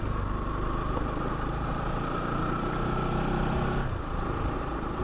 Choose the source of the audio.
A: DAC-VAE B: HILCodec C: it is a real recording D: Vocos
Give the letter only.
C